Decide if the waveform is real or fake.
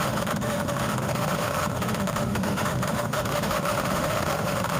fake